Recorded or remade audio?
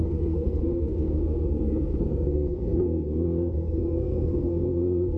remade